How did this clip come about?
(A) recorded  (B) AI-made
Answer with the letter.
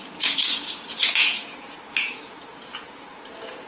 B